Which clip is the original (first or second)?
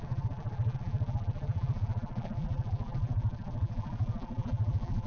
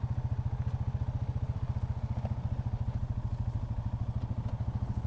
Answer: second